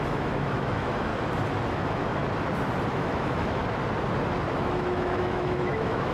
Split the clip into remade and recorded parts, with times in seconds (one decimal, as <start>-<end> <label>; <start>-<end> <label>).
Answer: 0.0-1.1 remade; 1.1-1.7 recorded; 1.7-2.2 remade; 2.2-2.9 recorded; 2.9-3.6 remade; 3.6-4.5 recorded; 4.5-6.1 remade